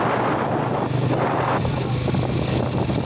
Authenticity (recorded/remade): recorded